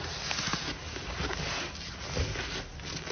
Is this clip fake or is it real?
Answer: real